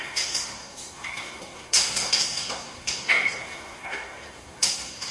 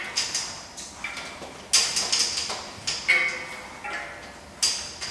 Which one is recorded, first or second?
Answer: second